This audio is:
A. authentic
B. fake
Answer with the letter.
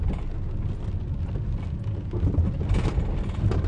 A